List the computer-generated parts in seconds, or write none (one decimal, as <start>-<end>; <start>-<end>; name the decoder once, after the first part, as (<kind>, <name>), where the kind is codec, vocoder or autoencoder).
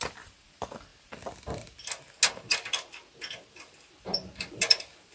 none